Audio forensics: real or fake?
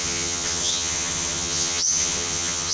fake